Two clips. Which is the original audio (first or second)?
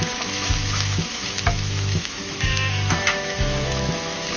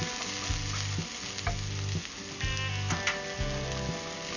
second